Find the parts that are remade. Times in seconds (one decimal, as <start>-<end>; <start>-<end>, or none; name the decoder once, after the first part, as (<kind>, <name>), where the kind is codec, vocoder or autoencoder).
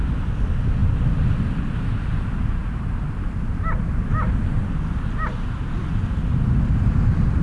none